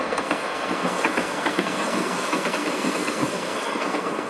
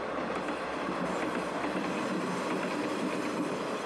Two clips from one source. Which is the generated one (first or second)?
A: first